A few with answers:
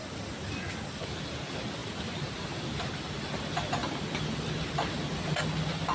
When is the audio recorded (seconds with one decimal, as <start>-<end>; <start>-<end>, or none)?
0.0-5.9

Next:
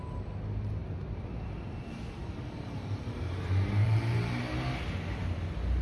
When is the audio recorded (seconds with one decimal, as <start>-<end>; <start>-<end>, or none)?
0.0-0.8; 1.4-2.2; 4.4-5.8

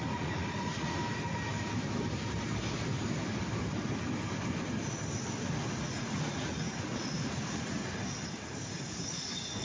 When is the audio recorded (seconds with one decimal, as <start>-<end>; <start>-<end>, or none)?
1.0-5.8; 7.8-9.6

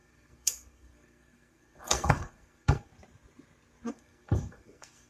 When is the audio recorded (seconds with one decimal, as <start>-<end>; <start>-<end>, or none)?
2.9-3.9

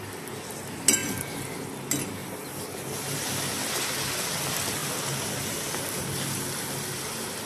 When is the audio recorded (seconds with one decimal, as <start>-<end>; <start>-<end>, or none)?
0.0-2.2; 3.2-7.5

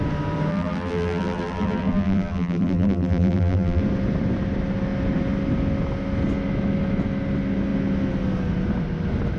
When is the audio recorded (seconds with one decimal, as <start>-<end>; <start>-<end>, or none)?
0.0-0.5; 3.8-9.4